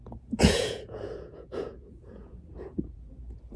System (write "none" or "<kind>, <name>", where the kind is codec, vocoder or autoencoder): vocoder, Vocos